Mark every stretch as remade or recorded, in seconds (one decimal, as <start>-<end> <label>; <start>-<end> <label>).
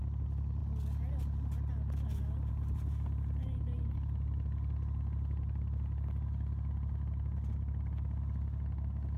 0.0-9.2 recorded